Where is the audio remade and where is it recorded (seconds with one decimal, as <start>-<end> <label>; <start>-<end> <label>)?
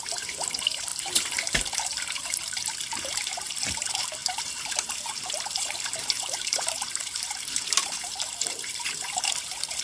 0.0-9.8 remade